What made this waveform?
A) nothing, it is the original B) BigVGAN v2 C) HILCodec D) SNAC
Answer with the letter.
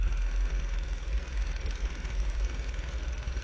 D